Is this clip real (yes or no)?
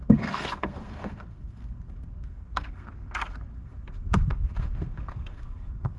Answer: no